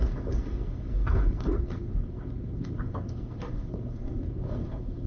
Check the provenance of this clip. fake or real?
fake